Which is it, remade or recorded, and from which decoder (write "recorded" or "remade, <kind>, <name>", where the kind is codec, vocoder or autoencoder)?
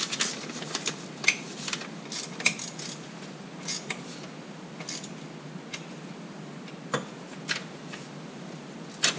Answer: recorded